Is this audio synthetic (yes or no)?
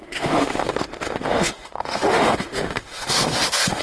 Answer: yes